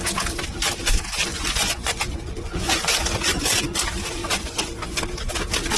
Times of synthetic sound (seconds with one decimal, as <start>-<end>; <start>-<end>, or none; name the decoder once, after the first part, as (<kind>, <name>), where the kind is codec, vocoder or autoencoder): 1.3-2.9 (vocoder, Vocos); 4.2-5.0